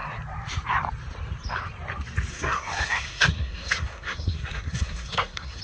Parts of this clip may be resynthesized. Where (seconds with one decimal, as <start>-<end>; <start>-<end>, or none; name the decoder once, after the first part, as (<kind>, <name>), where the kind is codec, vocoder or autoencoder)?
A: 2.3-5.6 (codec, SNAC)